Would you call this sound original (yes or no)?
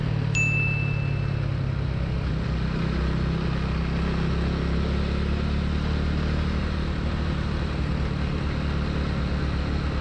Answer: yes